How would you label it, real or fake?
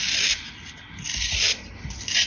real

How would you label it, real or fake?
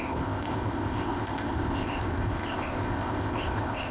fake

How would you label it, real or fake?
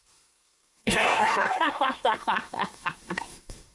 fake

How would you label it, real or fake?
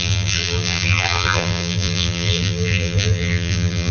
fake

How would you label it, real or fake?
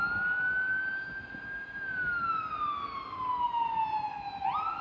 real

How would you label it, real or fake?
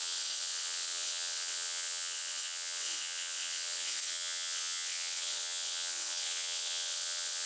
fake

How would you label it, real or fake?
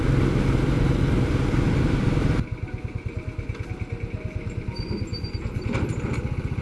real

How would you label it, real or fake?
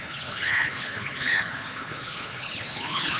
fake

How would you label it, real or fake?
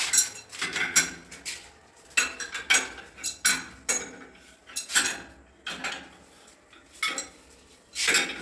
real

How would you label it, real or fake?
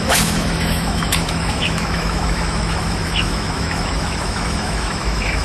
fake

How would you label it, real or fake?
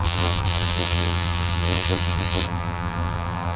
fake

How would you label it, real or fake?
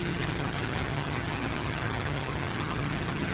fake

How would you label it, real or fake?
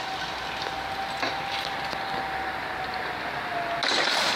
real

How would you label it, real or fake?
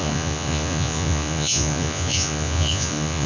fake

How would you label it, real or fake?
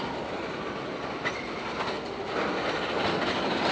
real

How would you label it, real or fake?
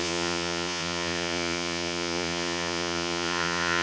fake